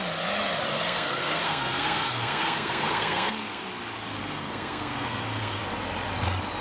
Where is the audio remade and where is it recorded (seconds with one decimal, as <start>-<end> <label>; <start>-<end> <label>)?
0.0-0.7 recorded; 0.7-3.6 remade; 3.6-4.2 recorded; 4.2-5.6 remade; 5.6-6.6 recorded